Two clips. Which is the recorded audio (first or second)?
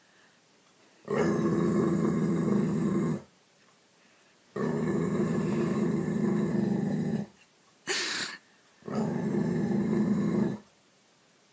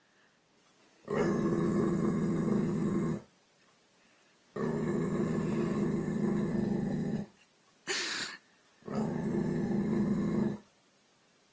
second